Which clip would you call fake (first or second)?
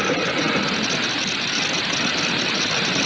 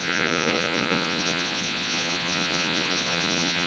second